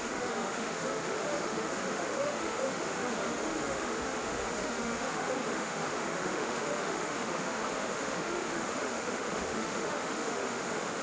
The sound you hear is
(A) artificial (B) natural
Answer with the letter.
A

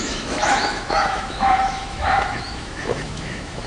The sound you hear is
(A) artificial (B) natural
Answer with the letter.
A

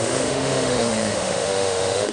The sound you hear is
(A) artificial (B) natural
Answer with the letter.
A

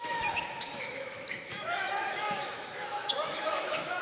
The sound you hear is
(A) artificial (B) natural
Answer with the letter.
A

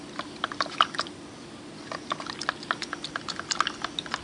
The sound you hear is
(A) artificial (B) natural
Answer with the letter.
B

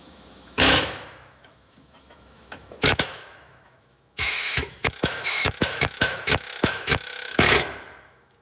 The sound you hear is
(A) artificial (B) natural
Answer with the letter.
A